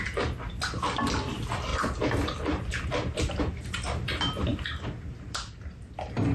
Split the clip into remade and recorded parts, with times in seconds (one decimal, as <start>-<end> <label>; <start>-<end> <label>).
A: 0.0-6.3 recorded